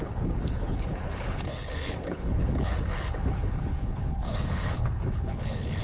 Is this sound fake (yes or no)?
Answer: yes